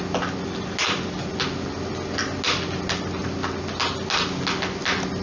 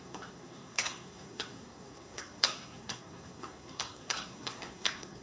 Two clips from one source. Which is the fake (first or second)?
second